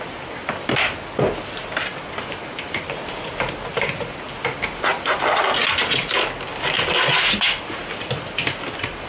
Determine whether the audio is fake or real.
real